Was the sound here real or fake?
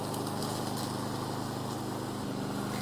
real